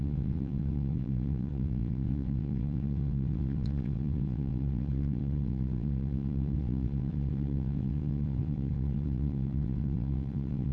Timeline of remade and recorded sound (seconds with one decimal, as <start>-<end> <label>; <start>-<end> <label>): 0.0-10.7 remade

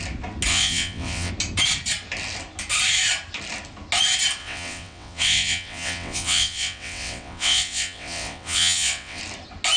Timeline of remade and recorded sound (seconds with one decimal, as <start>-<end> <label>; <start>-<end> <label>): 0.0-0.5 recorded; 0.5-1.3 remade; 1.3-4.4 recorded; 4.4-9.2 remade; 9.2-9.8 recorded

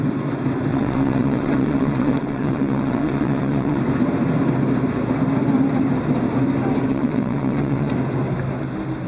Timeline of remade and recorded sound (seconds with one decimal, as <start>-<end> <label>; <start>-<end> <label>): 0.0-0.7 recorded; 0.7-3.8 remade; 3.8-6.9 recorded; 6.9-7.9 remade; 7.9-9.1 recorded

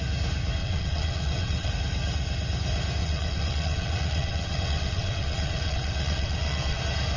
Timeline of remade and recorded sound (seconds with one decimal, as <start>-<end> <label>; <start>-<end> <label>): 0.0-0.6 recorded; 0.6-1.7 remade; 1.7-3.0 recorded; 3.0-6.8 remade; 6.8-7.2 recorded

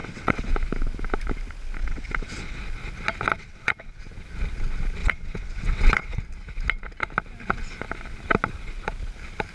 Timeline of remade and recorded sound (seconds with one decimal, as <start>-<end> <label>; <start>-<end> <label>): 0.0-0.5 remade; 0.5-1.8 recorded; 1.8-2.6 remade; 2.6-3.3 recorded; 3.3-4.0 remade; 4.0-5.0 recorded; 5.0-6.2 remade; 6.2-9.5 recorded

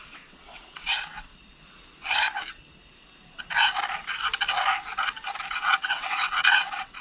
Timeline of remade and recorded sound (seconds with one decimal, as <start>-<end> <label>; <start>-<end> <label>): 0.0-1.3 remade; 1.3-5.5 recorded; 5.5-7.0 remade